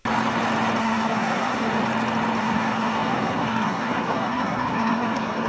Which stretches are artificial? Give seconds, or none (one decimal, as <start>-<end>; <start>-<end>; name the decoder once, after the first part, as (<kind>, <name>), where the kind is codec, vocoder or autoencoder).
0.8-1.8 (codec, SNAC); 2.4-5.5